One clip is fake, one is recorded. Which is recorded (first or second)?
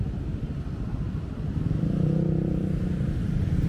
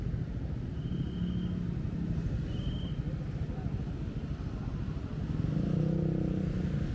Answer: second